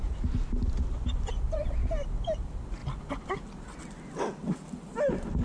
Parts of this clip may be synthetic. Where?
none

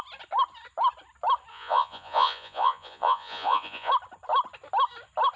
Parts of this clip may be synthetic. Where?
1.5-3.9

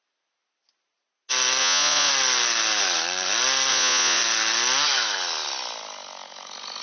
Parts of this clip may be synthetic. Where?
1.6-2.1; 3.7-4.2

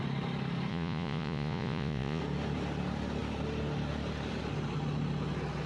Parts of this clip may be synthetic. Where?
0.7-2.2

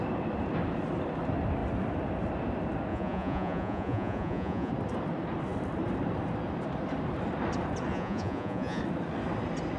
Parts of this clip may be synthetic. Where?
2.9-4.7; 7.9-8.8